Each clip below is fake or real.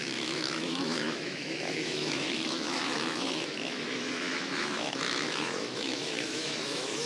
fake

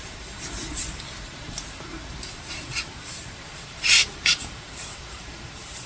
fake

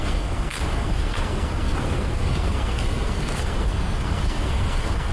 fake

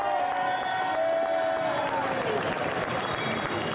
real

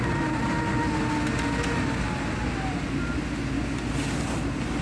real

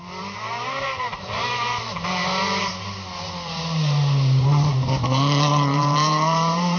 fake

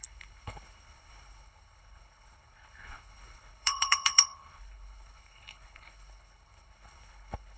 fake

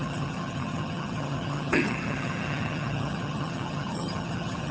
fake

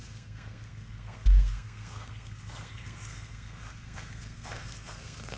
fake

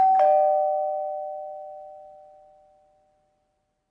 real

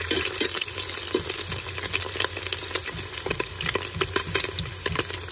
real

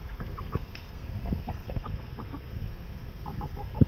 fake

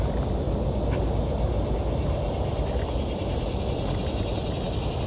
real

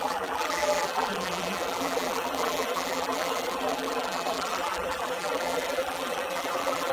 fake